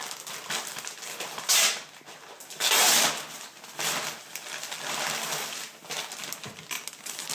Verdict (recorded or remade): recorded